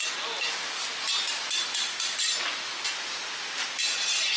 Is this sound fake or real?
real